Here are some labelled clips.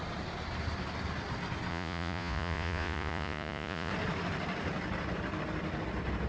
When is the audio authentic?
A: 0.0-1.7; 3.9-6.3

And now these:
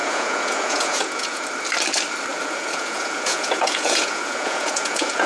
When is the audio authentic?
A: 1.5-2.3

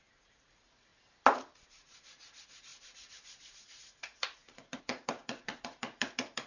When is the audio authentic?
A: 0.9-1.7

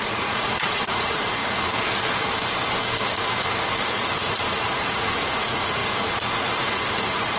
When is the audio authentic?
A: 1.4-3.9; 5.8-6.6

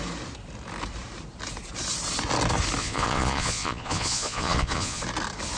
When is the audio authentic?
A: 0.0-2.8; 5.0-5.6

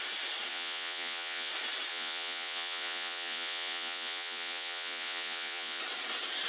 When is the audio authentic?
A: 0.0-0.5; 1.5-1.9; 5.8-6.5

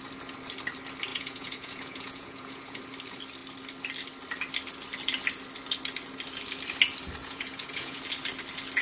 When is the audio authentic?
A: 0.0-1.1; 2.8-7.2; 8.0-8.8

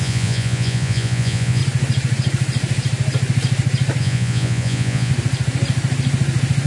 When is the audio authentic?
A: 1.6-4.0; 5.1-6.7